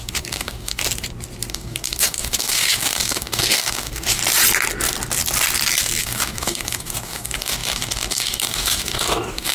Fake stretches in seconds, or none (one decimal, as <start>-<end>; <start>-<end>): 0.0-0.8; 1.5-4.2; 6.0-9.5